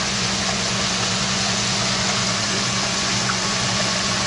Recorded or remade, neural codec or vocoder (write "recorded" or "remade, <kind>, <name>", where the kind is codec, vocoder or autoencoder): remade, vocoder, Vocos